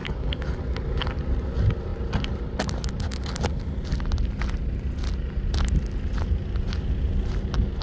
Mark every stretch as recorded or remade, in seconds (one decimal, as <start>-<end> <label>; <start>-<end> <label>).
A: 0.0-0.6 remade; 0.6-7.8 recorded